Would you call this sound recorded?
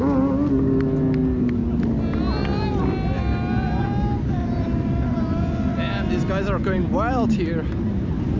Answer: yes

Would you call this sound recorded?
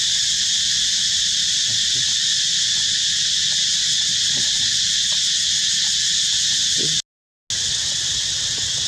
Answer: yes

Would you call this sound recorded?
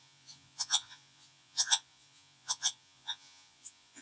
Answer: no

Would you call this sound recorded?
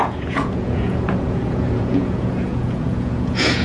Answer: no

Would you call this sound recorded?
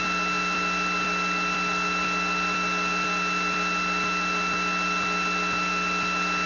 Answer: yes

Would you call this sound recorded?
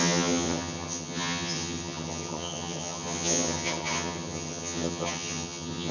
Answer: no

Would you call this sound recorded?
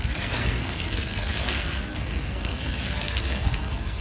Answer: no